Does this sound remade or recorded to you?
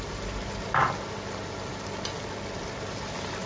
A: recorded